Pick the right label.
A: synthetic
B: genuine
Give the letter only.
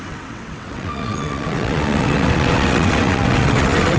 A